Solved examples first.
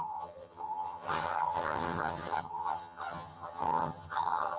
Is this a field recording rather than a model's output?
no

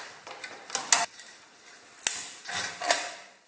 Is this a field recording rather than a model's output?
yes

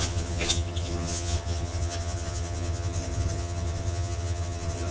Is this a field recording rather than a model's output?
no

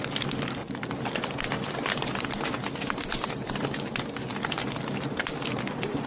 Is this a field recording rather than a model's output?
yes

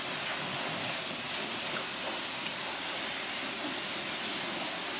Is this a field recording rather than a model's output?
yes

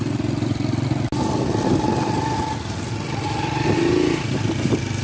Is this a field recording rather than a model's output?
yes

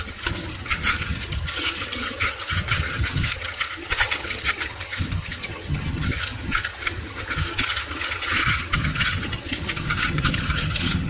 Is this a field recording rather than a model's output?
no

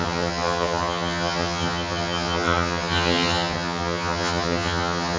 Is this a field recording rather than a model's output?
no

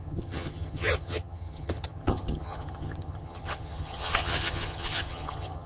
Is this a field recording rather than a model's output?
no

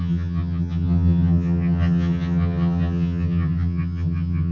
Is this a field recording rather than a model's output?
no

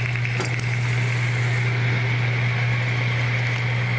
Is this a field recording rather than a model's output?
yes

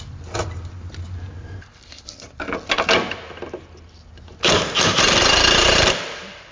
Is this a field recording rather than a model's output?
yes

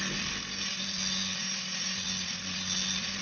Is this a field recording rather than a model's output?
yes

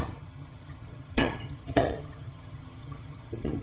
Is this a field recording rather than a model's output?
no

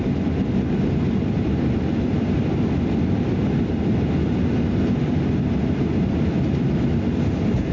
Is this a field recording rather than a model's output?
yes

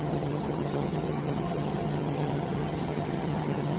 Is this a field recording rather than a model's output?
no